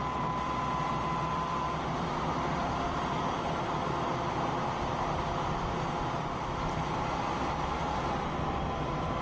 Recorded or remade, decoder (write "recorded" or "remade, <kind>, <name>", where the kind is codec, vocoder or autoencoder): remade, vocoder, BigVGAN v2